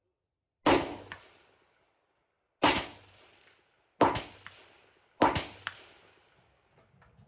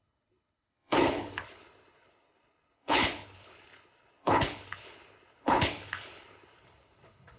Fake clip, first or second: second